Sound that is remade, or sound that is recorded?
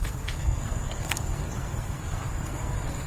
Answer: remade